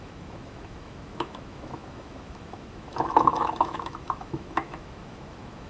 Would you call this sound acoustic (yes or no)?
no